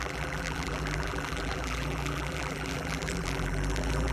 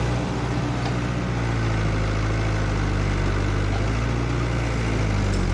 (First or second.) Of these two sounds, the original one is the second